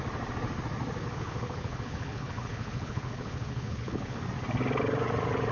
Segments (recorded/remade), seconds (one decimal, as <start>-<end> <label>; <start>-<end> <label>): 0.0-1.0 recorded; 1.0-4.2 remade; 4.2-5.5 recorded